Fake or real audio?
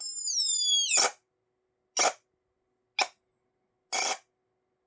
real